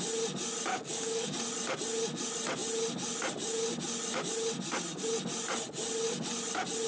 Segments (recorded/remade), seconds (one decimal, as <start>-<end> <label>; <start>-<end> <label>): 0.0-0.7 recorded; 0.7-1.3 remade; 1.3-6.9 recorded